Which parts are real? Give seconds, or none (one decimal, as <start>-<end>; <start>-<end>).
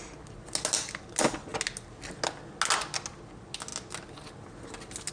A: 0.0-5.1